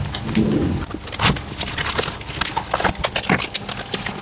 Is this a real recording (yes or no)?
yes